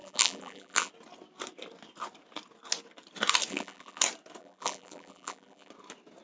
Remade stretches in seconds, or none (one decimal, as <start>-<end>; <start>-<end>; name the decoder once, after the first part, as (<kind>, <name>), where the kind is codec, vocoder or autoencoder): 0.0-0.9 (vocoder, BigVGAN v2); 3.5-4.0; 4.4-5.7